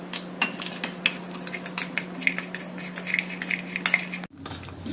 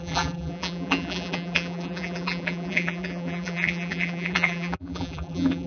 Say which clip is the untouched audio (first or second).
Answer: first